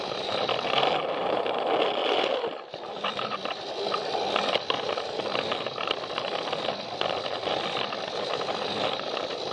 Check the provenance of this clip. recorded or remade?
recorded